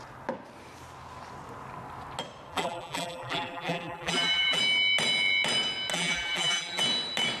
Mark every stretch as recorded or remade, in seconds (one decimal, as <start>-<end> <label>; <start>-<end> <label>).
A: 0.0-2.5 recorded; 2.5-4.6 remade; 4.6-5.9 recorded; 5.9-6.8 remade; 6.8-7.4 recorded